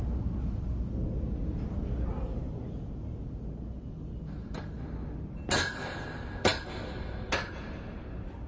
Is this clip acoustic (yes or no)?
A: yes